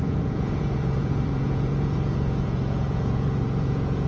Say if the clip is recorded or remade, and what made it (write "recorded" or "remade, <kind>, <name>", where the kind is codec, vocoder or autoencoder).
remade, vocoder, Vocos